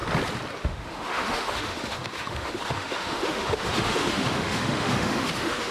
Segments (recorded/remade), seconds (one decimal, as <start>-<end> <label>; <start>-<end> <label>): 0.0-0.6 recorded; 0.6-5.7 remade